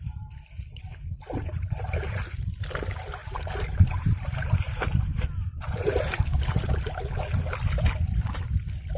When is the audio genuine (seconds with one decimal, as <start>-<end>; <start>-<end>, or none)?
0.0-0.9; 2.2-3.2; 7.0-9.0